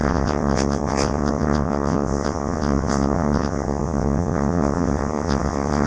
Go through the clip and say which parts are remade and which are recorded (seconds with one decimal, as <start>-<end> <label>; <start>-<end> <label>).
0.0-5.9 remade